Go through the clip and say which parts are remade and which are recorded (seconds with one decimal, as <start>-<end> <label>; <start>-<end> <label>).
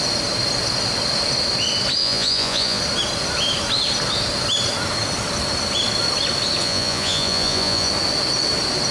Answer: 0.0-2.0 recorded; 2.0-2.8 remade; 2.8-6.6 recorded; 6.6-7.9 remade; 7.9-8.9 recorded